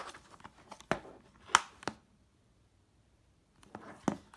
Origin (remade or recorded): recorded